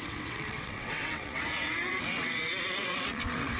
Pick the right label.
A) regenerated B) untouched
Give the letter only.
A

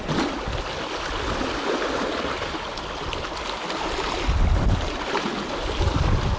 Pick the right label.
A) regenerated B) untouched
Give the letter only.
B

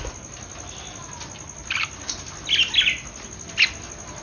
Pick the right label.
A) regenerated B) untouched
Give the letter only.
B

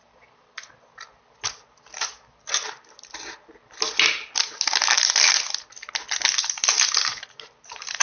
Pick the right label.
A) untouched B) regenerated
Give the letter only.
A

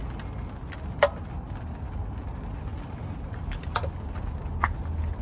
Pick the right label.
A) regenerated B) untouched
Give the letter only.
B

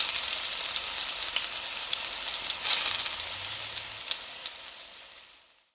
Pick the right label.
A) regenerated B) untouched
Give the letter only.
B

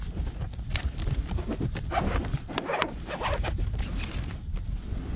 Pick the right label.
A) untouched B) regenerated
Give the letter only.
A